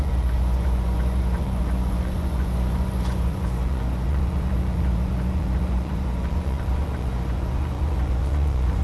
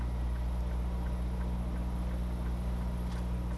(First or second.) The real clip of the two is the second